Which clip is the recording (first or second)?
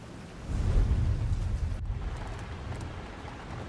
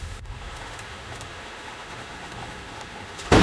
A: first